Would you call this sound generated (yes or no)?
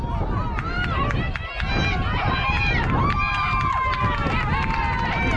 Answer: no